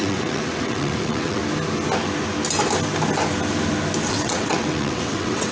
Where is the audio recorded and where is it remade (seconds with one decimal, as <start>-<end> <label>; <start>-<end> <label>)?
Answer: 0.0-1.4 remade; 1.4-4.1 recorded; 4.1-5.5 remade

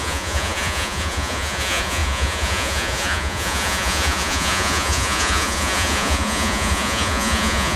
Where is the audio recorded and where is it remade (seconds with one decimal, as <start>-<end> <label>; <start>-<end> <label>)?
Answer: 0.0-7.8 remade

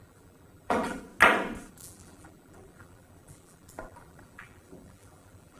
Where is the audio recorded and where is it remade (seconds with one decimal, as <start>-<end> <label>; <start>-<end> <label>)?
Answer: 0.0-1.1 remade; 1.1-1.7 recorded; 1.7-5.6 remade

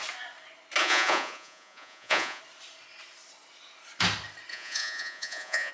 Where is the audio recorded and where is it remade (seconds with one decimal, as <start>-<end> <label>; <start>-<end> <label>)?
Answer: 0.0-0.8 recorded; 0.8-2.4 remade; 2.4-4.5 recorded; 4.5-5.7 remade

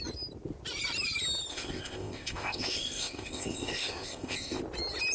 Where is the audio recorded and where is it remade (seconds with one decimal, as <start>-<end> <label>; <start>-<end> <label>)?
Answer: 0.0-1.5 recorded; 1.5-4.6 remade; 4.6-5.1 recorded

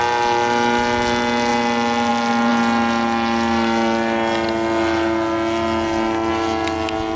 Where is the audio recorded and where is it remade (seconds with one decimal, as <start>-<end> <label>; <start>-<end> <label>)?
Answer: 0.0-7.2 recorded

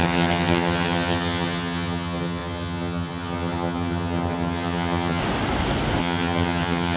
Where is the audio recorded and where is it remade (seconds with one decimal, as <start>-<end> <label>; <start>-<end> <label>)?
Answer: 0.0-5.2 remade; 5.2-6.0 recorded; 6.0-7.0 remade